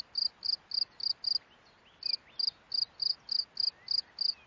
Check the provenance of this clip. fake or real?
real